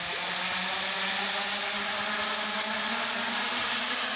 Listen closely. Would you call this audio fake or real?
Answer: real